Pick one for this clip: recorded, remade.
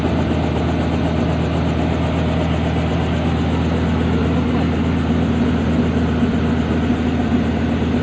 recorded